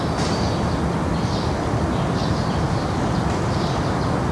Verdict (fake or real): real